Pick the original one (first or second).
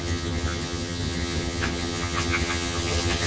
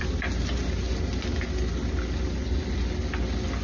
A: second